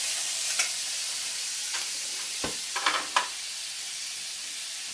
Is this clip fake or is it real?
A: real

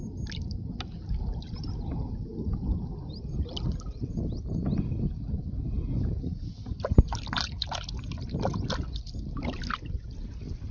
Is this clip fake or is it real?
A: real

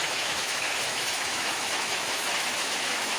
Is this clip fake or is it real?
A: fake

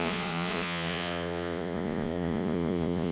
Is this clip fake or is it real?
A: fake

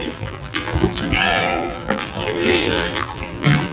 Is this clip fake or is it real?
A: fake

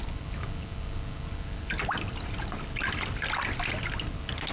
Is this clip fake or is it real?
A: real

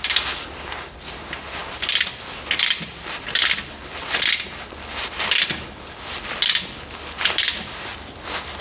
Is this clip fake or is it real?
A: real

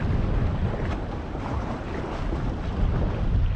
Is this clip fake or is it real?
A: real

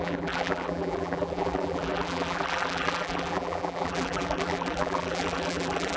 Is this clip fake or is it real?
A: fake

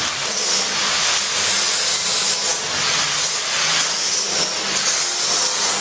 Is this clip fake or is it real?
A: fake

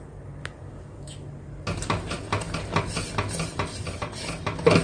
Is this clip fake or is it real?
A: real